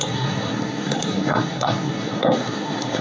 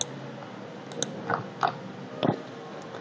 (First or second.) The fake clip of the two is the first